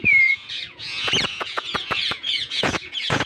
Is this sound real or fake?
fake